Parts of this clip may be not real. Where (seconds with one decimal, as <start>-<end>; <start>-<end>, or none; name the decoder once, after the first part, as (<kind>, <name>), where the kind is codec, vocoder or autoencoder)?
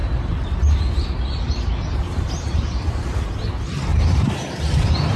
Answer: 1.9-3.0 (vocoder, BigVGAN v2); 3.9-4.5